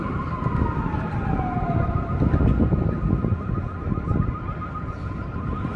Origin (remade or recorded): recorded